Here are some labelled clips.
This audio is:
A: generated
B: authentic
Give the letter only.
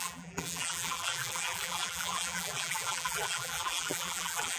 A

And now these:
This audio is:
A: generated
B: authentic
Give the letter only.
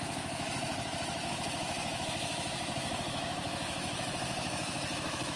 A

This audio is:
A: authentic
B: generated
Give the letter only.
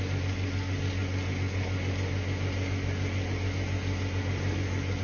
A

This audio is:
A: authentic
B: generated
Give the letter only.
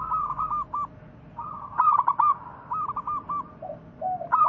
A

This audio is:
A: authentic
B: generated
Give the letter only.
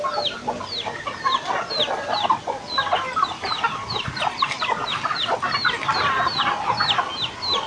A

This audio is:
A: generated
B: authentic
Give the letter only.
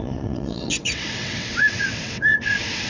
A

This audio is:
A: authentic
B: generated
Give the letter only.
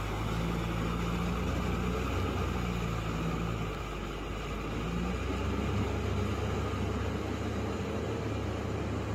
A